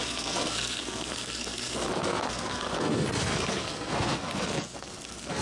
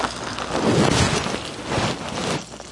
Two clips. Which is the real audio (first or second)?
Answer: second